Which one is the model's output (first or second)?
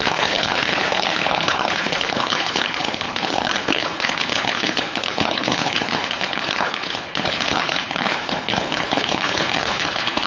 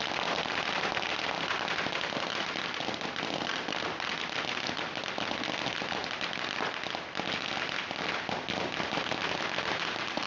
first